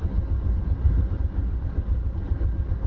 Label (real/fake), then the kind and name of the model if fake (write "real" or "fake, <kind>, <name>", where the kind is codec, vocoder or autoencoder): real